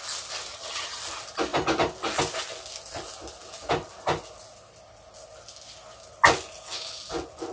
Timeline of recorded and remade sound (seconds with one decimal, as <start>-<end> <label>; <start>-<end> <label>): 0.0-0.5 recorded; 0.5-1.0 remade; 1.0-7.5 recorded